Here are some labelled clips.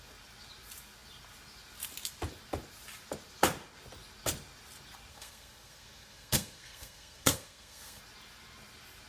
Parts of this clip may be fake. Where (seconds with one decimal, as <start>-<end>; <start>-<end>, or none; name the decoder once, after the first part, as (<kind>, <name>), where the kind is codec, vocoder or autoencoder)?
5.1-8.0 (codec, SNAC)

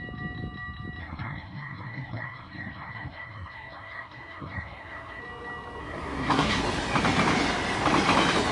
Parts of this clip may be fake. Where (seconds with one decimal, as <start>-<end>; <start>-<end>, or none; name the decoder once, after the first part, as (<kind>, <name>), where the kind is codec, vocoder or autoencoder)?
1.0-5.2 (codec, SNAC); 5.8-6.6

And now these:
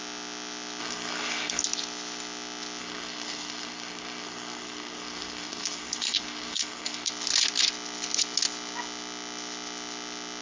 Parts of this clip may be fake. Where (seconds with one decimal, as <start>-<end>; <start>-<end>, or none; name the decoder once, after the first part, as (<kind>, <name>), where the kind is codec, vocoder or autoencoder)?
0.8-1.6 (codec, SNAC); 2.8-7.1

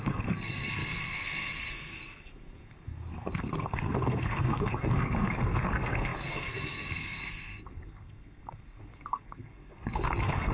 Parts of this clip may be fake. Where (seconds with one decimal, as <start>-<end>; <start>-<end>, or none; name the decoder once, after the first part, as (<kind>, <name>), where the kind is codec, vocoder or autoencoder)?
0.0-10.5 (codec, SNAC)

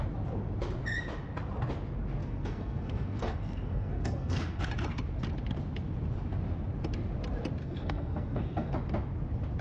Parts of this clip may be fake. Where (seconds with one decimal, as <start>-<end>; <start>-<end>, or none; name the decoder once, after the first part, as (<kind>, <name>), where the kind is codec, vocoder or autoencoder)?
2.2-4.6 (codec, SNAC); 7.6-8.7

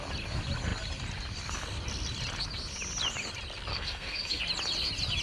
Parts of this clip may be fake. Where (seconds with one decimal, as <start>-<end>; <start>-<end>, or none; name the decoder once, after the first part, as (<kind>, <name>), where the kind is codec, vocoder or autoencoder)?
3.7-4.4 (codec, SNAC)

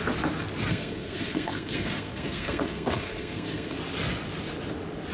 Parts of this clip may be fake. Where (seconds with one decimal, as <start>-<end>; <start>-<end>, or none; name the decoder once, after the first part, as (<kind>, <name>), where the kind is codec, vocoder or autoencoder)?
0.7-3.8 (codec, SNAC)